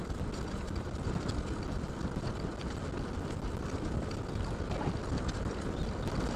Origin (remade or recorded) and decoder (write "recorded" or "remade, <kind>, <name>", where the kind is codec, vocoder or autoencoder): recorded